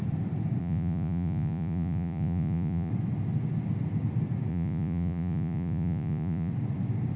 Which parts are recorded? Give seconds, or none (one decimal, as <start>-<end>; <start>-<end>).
0.0-0.6; 2.9-4.5; 6.5-7.2